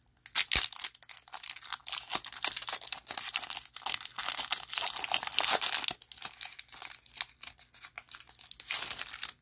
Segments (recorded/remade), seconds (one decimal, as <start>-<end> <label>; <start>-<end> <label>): 0.0-9.4 recorded